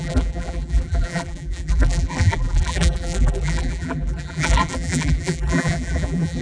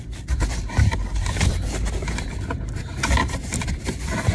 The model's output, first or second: first